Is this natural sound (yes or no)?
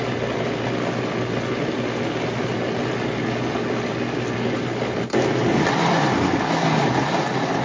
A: yes